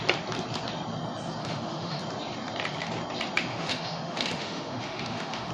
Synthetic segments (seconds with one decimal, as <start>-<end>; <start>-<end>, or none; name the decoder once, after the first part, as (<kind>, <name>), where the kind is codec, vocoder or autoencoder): 1.4-2.0 (autoencoder, DAC-VAE); 3.5-5.5